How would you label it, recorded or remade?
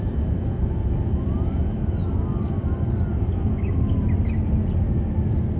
recorded